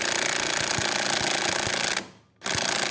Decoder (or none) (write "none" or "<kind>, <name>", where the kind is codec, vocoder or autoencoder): none